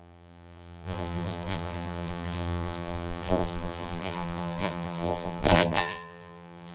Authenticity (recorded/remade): remade